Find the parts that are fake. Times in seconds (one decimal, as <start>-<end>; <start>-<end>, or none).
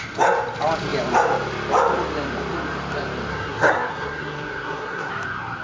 3.3-5.1